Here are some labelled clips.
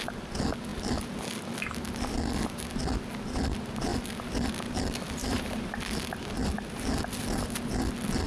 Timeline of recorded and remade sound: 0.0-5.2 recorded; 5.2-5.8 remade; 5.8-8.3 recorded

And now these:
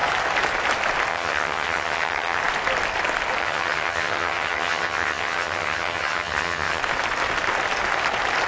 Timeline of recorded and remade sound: 0.0-1.1 recorded; 1.1-2.4 remade; 2.4-3.4 recorded; 3.4-6.8 remade; 6.8-8.5 recorded

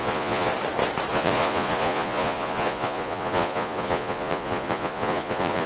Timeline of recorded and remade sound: 0.0-0.5 remade; 0.5-1.1 recorded; 1.1-5.7 remade

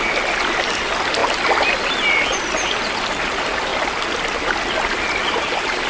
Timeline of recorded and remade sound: 0.0-5.9 recorded

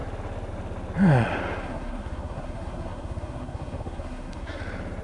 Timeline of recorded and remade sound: 0.0-1.6 recorded; 1.6-4.6 remade; 4.6-5.0 recorded

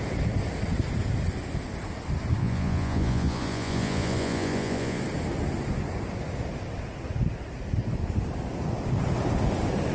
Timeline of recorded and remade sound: 0.0-2.4 recorded; 2.4-5.0 remade; 5.0-9.9 recorded

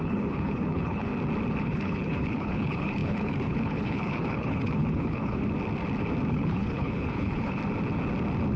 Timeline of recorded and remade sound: 0.0-1.1 remade; 1.1-1.6 recorded; 1.6-5.4 remade; 5.4-6.3 recorded; 6.3-7.6 remade; 7.6-8.6 recorded